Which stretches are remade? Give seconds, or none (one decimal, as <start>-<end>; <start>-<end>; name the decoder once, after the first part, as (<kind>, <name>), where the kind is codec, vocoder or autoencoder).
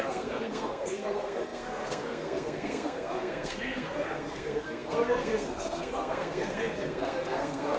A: 0.0-7.8 (codec, SNAC)